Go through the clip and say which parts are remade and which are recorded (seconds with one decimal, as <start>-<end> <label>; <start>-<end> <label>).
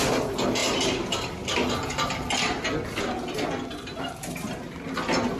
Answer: 0.0-5.4 recorded